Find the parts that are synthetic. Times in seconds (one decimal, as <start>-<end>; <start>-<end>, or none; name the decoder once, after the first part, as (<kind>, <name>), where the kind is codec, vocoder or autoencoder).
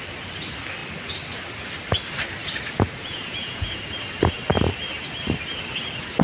3.0-3.8 (vocoder, Vocos)